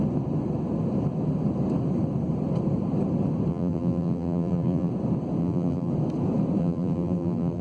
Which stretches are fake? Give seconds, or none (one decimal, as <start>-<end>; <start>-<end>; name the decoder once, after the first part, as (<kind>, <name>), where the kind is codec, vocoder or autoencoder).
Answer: 3.5-4.9 (vocoder, BigVGAN v2); 5.4-5.9; 6.6-7.6